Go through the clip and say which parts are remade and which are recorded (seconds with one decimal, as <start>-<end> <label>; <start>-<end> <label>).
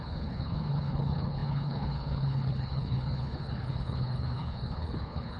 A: 0.0-5.4 remade